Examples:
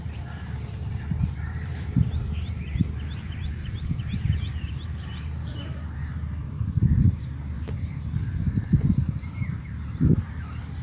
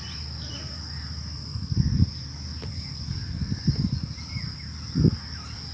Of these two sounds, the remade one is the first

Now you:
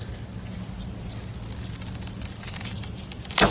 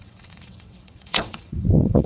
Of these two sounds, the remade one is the second